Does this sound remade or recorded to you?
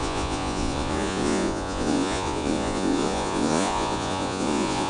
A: remade